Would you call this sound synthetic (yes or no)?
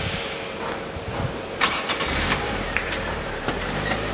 yes